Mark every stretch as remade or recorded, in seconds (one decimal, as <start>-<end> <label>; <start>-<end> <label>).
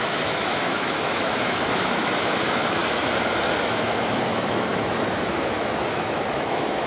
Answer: 0.0-2.8 remade; 2.8-3.6 recorded; 3.6-6.9 remade